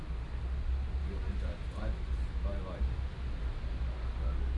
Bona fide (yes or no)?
yes